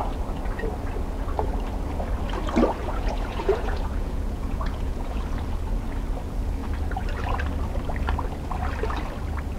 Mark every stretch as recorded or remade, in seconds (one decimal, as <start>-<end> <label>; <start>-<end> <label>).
0.0-2.8 recorded; 2.8-5.2 remade; 5.2-9.6 recorded